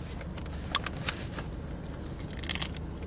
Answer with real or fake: real